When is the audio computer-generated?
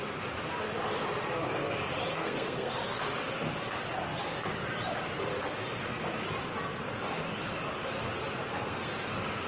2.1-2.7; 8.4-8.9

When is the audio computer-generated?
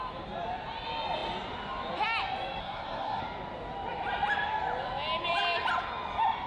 2.6-3.2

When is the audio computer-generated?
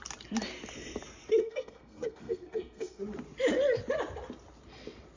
1.4-3.0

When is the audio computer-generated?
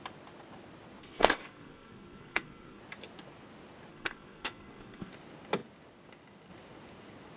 1.0-2.8; 3.9-5.1